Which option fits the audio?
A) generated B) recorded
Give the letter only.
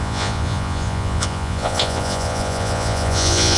A